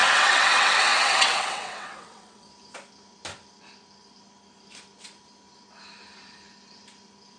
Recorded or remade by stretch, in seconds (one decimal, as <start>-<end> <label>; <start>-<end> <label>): 0.0-2.5 remade; 2.5-7.4 recorded